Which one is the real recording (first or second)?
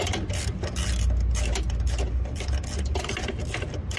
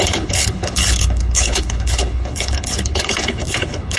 first